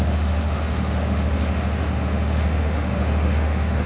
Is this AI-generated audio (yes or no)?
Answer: yes